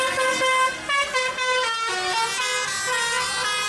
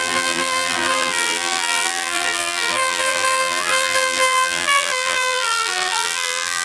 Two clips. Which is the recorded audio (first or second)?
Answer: first